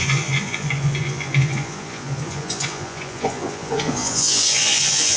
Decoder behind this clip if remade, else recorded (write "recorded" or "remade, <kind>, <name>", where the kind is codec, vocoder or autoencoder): remade, vocoder, Vocos